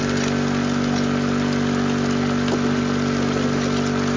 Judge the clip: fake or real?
real